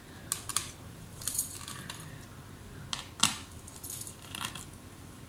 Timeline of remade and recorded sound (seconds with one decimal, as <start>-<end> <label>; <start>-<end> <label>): 0.0-0.5 recorded; 0.5-1.2 remade; 1.2-5.3 recorded